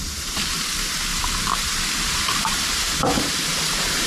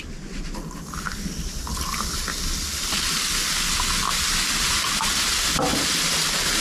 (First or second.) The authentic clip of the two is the second